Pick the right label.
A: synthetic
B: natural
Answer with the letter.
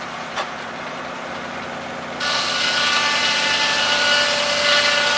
B